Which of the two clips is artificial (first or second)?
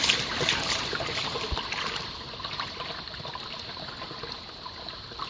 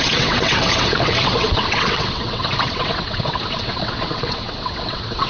second